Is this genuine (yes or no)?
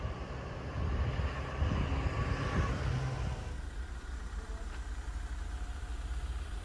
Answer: yes